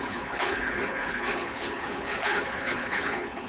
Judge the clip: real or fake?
fake